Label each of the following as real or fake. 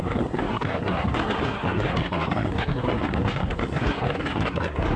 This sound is fake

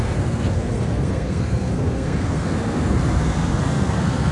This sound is fake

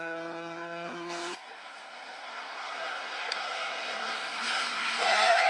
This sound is fake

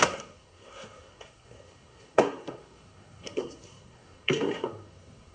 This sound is fake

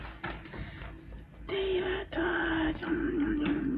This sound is real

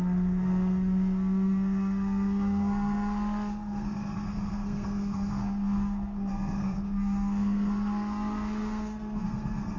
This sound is fake